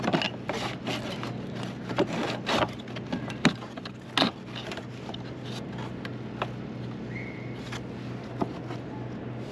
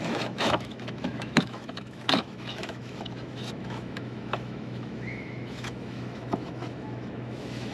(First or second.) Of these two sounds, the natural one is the first